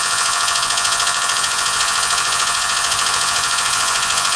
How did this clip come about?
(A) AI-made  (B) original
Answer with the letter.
A